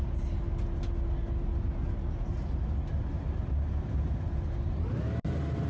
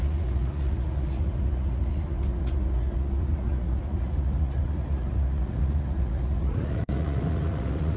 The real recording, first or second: first